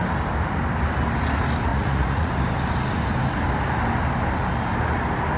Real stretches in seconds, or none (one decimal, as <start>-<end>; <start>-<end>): 0.0-1.7; 2.3-5.4